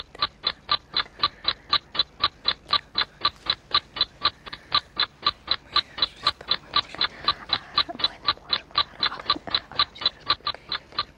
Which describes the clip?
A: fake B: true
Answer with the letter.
B